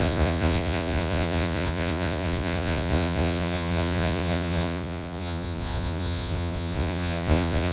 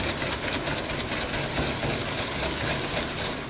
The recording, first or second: second